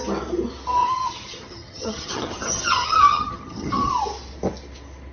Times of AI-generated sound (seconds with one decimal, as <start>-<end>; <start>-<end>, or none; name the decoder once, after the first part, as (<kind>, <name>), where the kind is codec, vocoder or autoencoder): 0.8-3.9 (vocoder, HiFi-GAN)